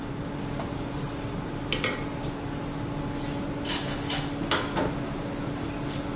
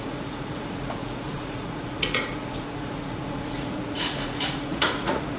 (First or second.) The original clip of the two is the first